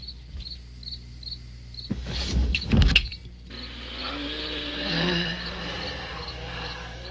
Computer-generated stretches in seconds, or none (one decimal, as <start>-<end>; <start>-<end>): 1.9-3.1; 6.1-7.1